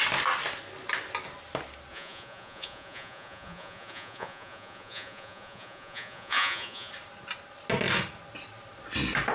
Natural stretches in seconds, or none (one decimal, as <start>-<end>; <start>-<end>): 0.0-1.9; 6.9-9.3